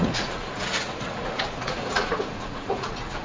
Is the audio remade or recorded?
remade